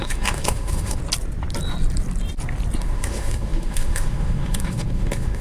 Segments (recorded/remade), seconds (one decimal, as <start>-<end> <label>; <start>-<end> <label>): 0.0-1.0 remade; 1.0-2.8 recorded; 2.8-5.4 remade